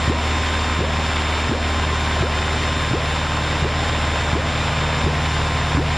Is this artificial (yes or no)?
no